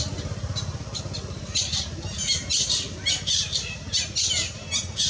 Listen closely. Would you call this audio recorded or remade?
recorded